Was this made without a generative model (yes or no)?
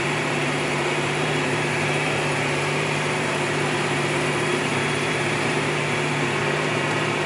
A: no